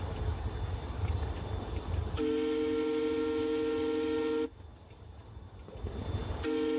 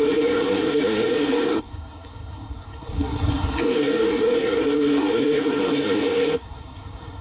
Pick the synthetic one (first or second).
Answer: second